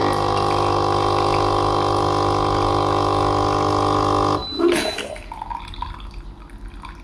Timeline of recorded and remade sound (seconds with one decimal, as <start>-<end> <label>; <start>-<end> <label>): 0.0-7.0 recorded